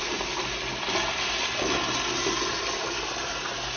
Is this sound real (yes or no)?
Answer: yes